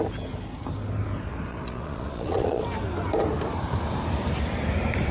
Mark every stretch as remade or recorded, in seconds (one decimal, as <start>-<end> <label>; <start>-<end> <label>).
0.0-1.5 recorded; 1.5-2.6 remade; 2.6-5.1 recorded